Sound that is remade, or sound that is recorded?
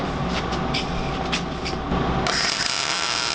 recorded